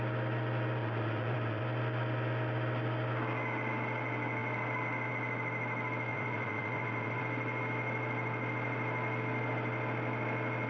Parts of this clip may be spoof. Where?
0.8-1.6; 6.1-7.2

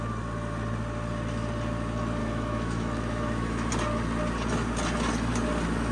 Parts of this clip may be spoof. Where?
2.2-3.7